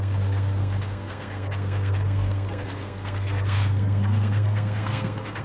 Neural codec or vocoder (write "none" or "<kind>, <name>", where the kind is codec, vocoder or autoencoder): codec, SNAC